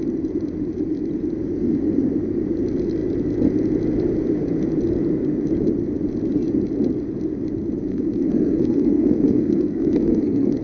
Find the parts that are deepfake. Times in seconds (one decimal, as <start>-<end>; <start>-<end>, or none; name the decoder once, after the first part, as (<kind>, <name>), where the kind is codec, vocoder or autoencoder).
7.9-10.6 (codec, SNAC)